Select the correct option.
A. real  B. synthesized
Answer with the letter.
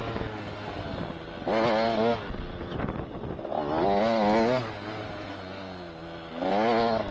A